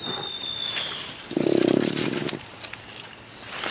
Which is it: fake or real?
real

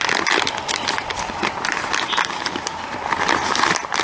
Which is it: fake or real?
real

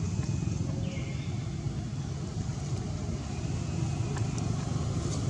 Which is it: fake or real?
real